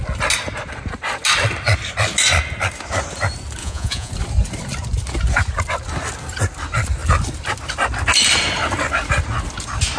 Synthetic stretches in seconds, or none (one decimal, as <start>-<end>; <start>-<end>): 3.6-4.1